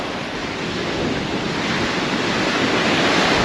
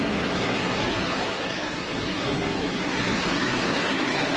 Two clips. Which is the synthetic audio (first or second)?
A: second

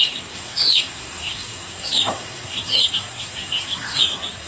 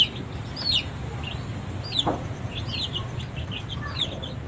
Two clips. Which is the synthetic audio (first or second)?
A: first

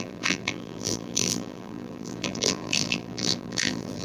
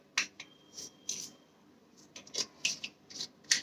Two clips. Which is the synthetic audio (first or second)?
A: first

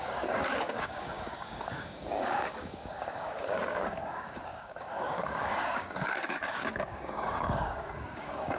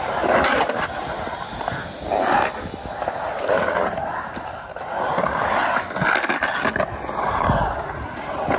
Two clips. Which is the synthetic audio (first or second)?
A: first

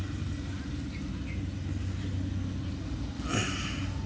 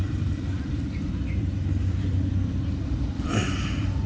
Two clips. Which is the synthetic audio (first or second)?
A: second